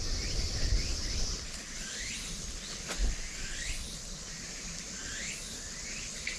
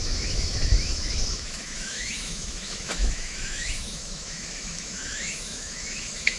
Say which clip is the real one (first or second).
first